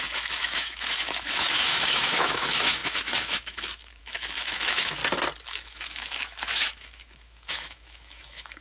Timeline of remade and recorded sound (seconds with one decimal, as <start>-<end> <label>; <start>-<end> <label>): 0.0-5.0 remade; 5.0-5.5 recorded; 5.5-8.6 remade